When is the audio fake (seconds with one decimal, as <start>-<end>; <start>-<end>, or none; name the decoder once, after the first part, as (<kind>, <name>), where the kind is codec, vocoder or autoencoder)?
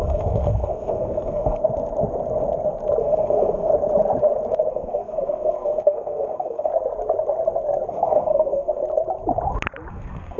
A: 0.0-1.6 (codec, SNAC); 3.0-3.7; 4.7-6.7; 7.9-8.8; 9.9-10.4